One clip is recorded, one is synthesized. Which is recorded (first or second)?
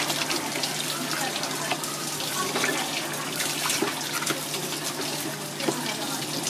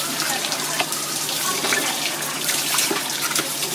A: first